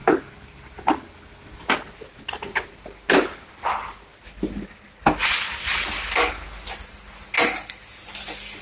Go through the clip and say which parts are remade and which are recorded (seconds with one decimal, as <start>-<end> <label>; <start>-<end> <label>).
0.0-8.6 recorded